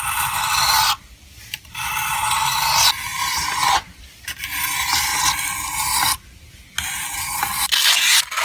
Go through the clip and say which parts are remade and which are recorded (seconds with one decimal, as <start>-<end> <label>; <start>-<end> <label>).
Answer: 0.0-5.1 remade; 5.1-7.3 recorded; 7.3-8.4 remade